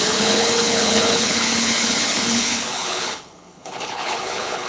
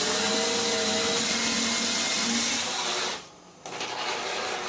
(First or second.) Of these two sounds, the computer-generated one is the first